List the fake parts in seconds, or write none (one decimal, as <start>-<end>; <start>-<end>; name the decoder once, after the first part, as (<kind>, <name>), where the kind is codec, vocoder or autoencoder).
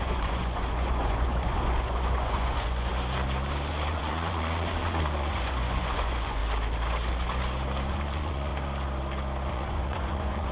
0.0-2.9 (vocoder, Vocos); 3.7-6.4; 7.9-8.5; 9.5-10.5